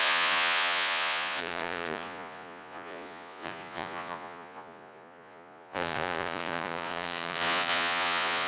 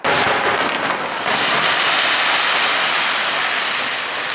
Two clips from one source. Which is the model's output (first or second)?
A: first